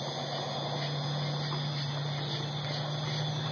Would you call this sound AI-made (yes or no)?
no